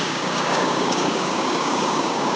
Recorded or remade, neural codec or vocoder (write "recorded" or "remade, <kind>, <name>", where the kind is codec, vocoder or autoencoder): remade, codec, DAC